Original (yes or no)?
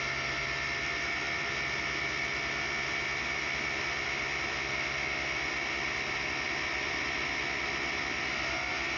yes